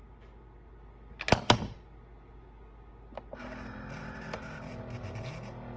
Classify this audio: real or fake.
real